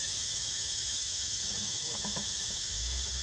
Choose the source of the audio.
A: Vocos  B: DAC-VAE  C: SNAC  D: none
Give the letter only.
B